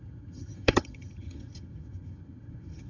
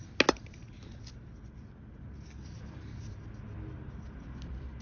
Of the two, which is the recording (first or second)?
second